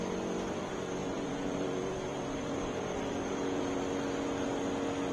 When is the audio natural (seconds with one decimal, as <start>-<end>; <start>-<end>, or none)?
0.0-1.0; 3.8-5.1